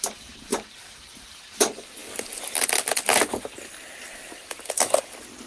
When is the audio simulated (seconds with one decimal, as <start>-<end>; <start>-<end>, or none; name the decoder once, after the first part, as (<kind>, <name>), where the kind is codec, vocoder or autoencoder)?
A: 0.5-1.4 (vocoder, BigVGAN v2)